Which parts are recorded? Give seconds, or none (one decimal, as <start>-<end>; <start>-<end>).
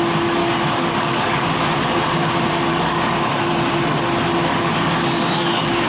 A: 0.0-0.4; 1.6-2.7; 3.5-4.5